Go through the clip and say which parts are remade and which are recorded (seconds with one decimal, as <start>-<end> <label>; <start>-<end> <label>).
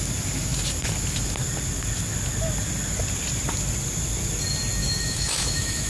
0.0-4.8 recorded; 4.8-5.9 remade